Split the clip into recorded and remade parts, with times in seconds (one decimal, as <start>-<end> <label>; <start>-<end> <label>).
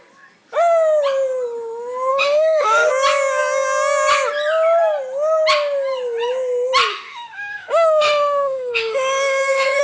0.0-2.1 recorded; 2.1-2.9 remade; 2.9-6.9 recorded; 6.9-9.8 remade